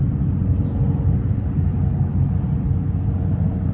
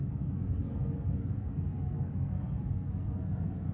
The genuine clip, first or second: first